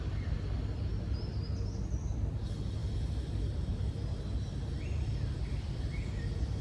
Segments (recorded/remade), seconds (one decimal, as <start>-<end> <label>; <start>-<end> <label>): 0.0-6.6 recorded